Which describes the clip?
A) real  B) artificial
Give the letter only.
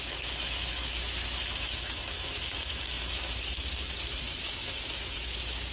B